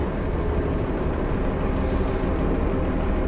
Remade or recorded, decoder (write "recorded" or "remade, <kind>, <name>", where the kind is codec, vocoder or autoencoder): recorded